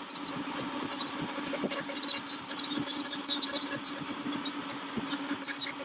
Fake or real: real